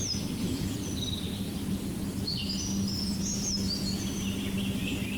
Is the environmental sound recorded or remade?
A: recorded